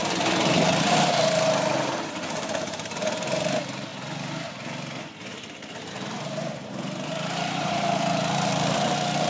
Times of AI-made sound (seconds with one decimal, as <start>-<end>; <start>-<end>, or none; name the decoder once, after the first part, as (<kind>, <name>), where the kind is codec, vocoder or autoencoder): 0.0-3.9 (vocoder, BigVGAN v2); 5.9-9.3